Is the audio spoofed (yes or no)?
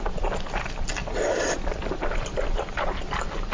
no